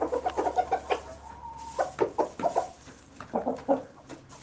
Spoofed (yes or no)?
no